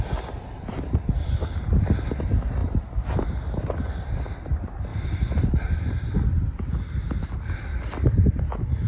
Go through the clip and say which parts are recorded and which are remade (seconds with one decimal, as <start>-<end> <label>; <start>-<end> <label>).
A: 0.0-4.9 recorded; 4.9-6.4 remade; 6.4-8.9 recorded